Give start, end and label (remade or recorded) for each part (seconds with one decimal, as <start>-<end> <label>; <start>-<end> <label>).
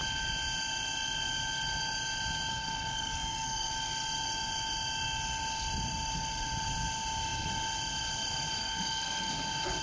0.0-2.5 recorded; 2.5-3.7 remade; 3.7-8.6 recorded; 8.6-9.3 remade; 9.3-9.8 recorded